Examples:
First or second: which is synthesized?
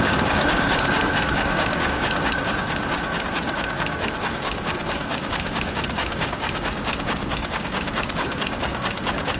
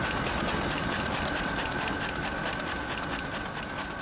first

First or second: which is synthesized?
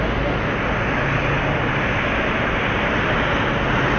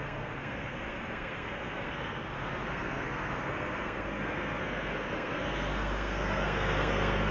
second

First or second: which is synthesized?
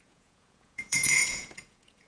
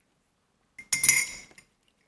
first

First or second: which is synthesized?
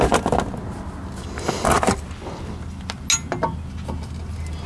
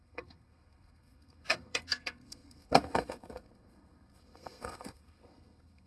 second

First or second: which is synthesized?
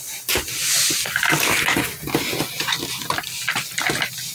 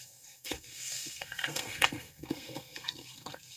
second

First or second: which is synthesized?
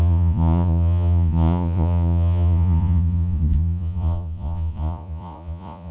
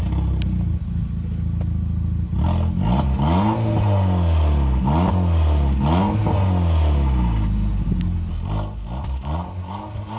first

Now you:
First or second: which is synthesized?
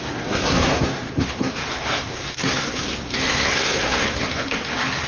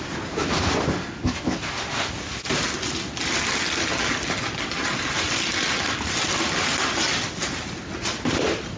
first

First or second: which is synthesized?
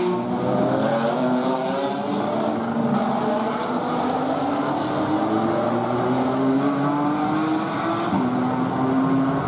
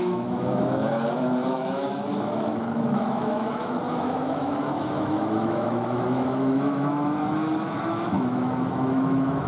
second